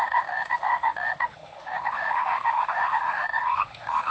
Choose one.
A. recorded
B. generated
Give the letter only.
B